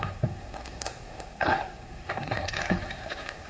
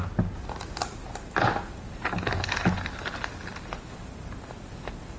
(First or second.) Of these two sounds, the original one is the second